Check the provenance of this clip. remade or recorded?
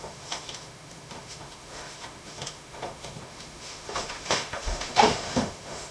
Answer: remade